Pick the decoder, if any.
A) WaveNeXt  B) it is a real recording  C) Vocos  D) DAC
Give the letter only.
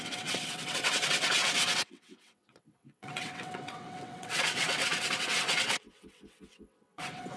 A